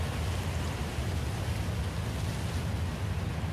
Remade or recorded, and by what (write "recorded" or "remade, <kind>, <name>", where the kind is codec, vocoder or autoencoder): recorded